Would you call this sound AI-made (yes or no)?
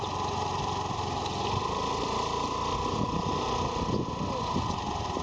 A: no